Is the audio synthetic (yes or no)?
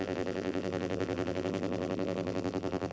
yes